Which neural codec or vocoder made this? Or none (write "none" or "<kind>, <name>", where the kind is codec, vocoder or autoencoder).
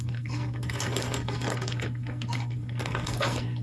codec, SNAC